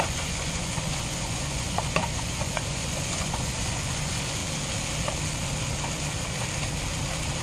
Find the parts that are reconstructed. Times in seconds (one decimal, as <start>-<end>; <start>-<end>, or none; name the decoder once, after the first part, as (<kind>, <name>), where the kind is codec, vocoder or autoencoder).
0.0-4.4 (vocoder, Vocos)